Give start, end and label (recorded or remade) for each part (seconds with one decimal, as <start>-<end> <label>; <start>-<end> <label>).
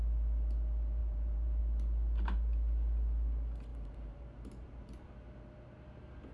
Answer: 0.0-1.0 recorded; 1.0-1.6 remade; 1.6-3.7 recorded; 3.7-5.1 remade; 5.1-6.3 recorded